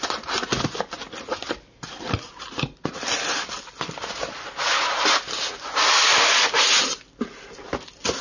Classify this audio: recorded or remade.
recorded